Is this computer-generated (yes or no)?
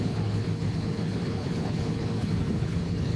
yes